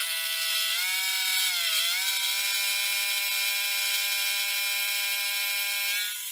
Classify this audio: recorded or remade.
recorded